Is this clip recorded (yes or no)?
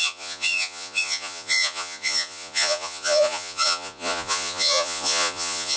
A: no